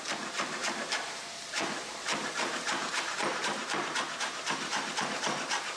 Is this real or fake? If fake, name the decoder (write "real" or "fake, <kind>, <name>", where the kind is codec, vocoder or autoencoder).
fake, vocoder, BigVGAN v2